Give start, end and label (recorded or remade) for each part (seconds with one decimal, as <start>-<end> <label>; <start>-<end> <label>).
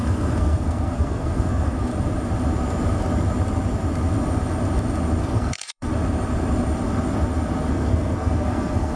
0.0-1.9 remade; 1.9-5.2 recorded; 5.2-5.9 remade; 5.9-7.7 recorded; 7.7-9.0 remade